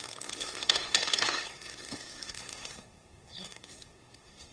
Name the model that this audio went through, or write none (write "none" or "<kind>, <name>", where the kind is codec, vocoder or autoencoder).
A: codec, SNAC